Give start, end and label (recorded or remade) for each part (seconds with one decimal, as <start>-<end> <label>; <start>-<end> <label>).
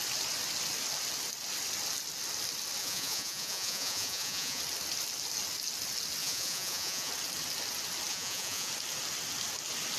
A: 0.0-2.8 recorded; 2.8-4.6 remade; 4.6-6.2 recorded; 6.2-7.1 remade; 7.1-8.1 recorded; 8.1-8.7 remade; 8.7-10.0 recorded